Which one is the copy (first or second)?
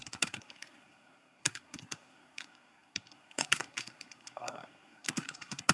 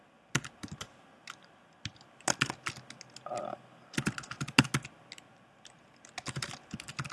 first